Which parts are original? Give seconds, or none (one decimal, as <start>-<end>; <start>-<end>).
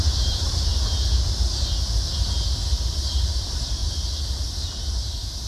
0.7-3.1; 3.8-4.7